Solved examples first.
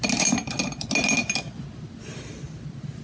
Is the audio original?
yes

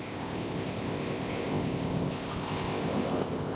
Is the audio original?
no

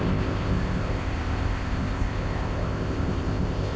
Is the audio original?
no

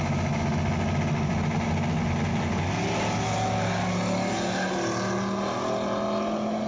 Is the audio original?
yes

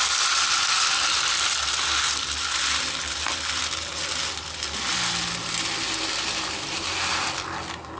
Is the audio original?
yes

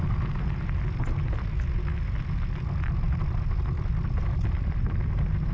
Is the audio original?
yes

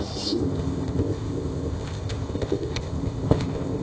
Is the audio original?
no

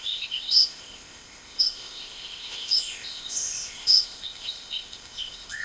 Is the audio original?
no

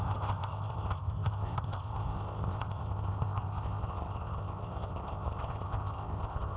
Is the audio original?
no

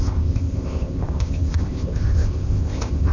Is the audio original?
no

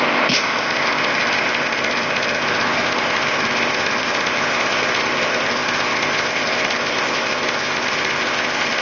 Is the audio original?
no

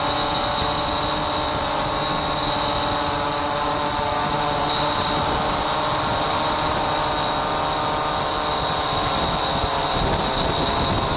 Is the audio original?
yes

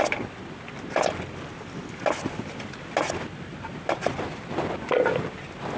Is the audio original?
yes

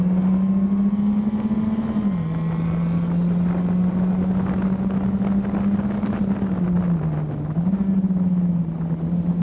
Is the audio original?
yes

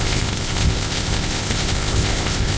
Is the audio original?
no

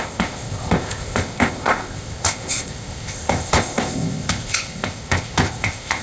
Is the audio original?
no